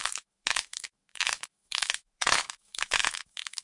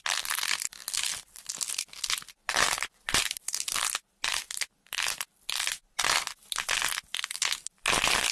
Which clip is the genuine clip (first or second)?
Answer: second